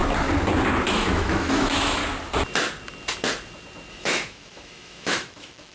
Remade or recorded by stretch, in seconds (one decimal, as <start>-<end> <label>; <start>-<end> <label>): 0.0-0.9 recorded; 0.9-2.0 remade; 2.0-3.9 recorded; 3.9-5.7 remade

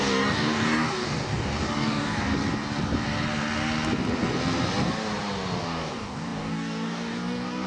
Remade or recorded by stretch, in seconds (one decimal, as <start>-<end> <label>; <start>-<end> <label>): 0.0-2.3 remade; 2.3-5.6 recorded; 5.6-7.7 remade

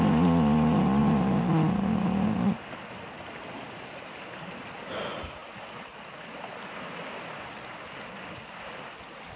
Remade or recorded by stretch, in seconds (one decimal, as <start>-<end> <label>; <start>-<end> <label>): 0.0-9.4 recorded

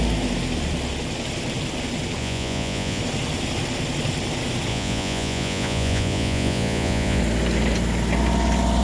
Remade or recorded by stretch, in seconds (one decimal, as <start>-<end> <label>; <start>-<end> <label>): 0.0-2.2 recorded; 2.2-3.0 remade; 3.0-4.7 recorded; 4.7-7.2 remade; 7.2-8.8 recorded